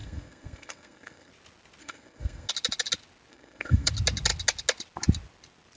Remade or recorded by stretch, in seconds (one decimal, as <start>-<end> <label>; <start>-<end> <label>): 0.0-1.3 remade; 1.3-1.8 recorded; 1.8-2.5 remade; 2.5-3.3 recorded; 3.3-3.9 remade; 3.9-5.8 recorded